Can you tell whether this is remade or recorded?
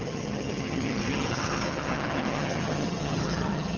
remade